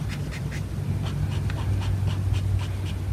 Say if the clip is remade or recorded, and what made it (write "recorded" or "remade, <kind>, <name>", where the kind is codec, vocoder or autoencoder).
recorded